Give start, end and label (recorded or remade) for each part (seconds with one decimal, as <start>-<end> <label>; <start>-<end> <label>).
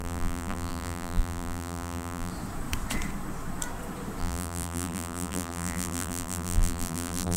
0.0-2.3 remade; 2.3-4.2 recorded; 4.2-7.4 remade